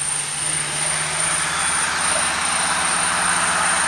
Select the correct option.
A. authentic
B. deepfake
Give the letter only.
A